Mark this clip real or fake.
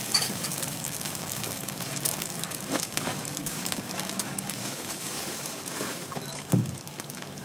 fake